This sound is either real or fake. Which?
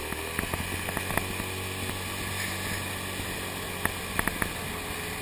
real